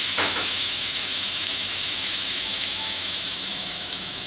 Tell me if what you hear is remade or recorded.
remade